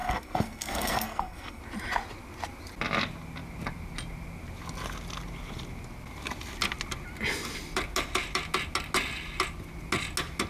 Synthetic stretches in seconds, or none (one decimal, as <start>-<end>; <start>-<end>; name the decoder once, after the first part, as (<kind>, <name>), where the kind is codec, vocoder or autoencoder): 0.0-1.6 (codec, SNAC)